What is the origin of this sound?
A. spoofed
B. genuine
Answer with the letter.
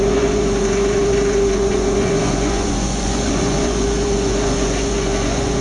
A